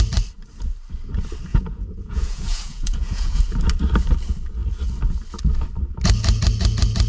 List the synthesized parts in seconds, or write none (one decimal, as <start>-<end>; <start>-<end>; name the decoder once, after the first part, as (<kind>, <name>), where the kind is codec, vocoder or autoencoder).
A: 1.5-3.4 (vocoder, Vocos)